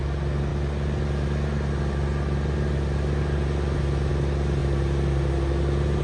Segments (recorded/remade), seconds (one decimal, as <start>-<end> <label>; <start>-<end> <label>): 0.0-6.0 recorded